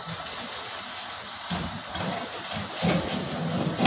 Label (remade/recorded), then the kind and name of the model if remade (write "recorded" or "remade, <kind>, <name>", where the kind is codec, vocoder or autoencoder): recorded